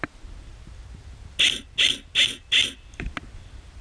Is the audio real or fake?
real